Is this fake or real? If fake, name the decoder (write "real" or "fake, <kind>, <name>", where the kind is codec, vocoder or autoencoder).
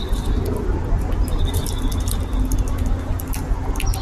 real